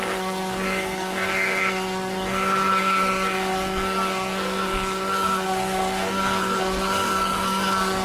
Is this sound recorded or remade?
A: remade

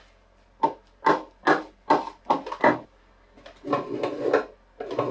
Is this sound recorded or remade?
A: recorded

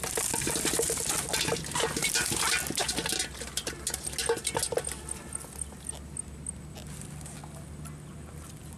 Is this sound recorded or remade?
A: recorded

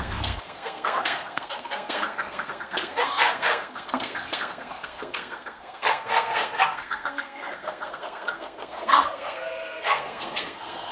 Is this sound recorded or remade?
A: remade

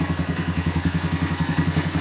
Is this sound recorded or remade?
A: remade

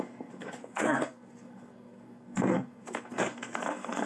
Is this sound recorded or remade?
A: remade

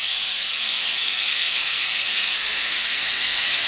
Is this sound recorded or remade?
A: remade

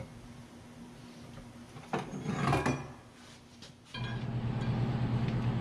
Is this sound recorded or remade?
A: recorded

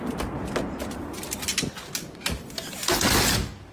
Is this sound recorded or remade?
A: recorded